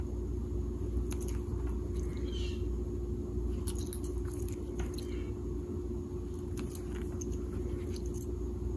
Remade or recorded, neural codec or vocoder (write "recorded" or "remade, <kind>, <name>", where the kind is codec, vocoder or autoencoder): recorded